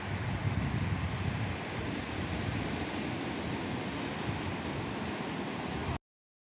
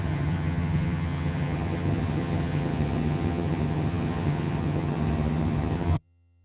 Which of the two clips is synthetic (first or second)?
second